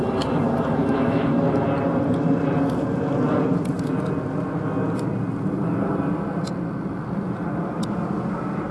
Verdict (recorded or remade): recorded